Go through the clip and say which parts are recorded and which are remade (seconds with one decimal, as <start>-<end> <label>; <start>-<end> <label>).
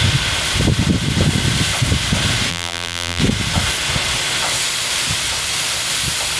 0.0-2.5 recorded; 2.5-3.2 remade; 3.2-6.4 recorded